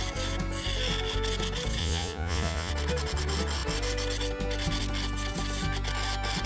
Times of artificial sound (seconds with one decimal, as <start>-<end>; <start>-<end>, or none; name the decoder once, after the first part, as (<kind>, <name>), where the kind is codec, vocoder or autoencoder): 1.8-2.7 (vocoder, Vocos)